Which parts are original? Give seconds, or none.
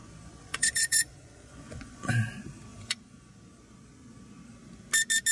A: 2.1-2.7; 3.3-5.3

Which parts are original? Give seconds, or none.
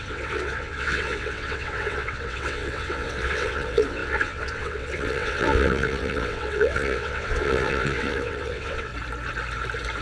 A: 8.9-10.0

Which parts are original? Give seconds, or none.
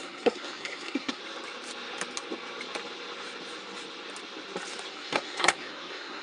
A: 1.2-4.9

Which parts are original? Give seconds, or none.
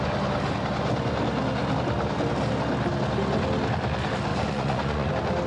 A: 0.0-4.3; 5.1-5.5